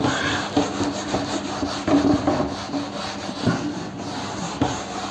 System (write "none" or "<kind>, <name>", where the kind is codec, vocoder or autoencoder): none